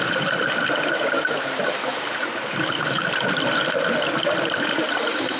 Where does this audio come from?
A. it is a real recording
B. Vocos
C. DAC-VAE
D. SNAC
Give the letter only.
A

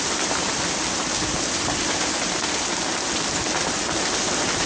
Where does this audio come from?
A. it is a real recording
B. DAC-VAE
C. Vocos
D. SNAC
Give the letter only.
A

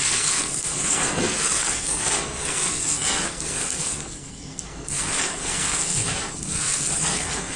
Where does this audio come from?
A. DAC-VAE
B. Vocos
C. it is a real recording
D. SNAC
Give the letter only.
D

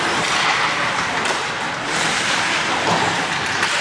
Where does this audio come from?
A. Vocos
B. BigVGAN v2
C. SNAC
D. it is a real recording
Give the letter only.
B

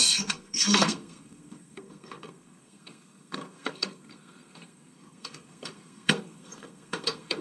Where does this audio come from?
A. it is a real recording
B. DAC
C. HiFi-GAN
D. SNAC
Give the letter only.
D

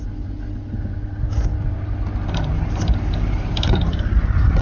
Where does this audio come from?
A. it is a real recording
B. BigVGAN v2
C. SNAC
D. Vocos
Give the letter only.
A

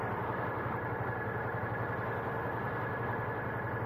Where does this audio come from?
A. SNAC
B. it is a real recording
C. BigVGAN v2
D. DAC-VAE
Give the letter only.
B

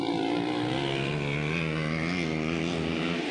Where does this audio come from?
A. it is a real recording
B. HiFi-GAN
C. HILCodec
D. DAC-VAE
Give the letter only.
A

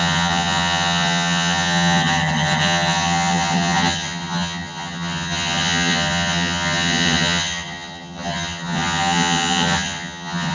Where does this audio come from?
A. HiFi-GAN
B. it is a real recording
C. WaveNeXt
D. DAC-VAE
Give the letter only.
A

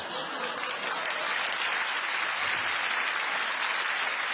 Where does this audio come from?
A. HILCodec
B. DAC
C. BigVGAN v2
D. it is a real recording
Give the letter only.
D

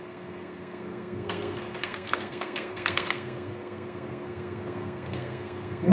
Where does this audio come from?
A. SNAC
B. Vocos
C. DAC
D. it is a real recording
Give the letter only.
A